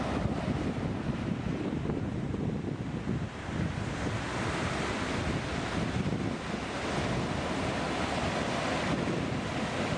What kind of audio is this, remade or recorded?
recorded